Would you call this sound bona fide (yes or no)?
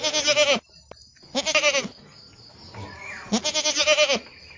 yes